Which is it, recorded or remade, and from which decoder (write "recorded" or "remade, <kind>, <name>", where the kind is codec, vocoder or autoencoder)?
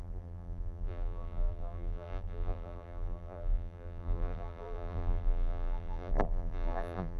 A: remade, vocoder, BigVGAN v2